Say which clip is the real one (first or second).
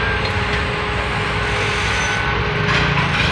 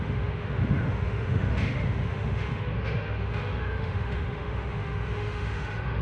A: first